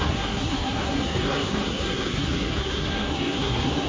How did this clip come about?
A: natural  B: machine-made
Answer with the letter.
B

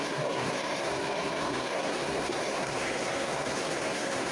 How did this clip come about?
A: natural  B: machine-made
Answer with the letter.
B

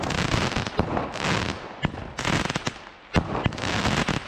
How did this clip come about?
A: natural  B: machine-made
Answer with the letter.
A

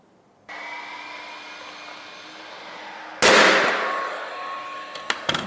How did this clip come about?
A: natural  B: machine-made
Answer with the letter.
A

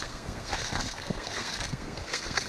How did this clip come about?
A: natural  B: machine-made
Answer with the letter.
B